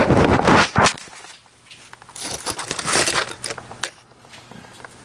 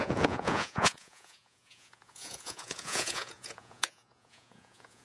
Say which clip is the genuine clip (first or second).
first